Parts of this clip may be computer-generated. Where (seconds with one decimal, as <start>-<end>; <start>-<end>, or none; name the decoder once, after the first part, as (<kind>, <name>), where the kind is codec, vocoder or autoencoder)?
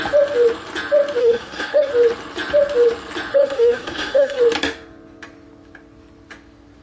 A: 1.2-1.9 (codec, SNAC); 3.3-4.4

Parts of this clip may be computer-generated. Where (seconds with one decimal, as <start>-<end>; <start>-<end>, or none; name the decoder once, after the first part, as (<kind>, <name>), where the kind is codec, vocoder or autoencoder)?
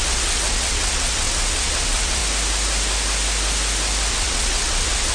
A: 0.0-2.2 (vocoder, WaveNeXt); 4.1-5.1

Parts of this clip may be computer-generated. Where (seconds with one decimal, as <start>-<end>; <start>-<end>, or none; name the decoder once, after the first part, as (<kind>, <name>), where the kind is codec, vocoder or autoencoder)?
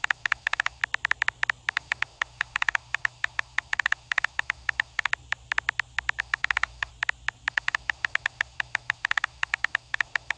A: 0.0-0.8 (autoencoder, DAC-VAE); 1.7-5.1; 6.2-6.9; 7.5-10.4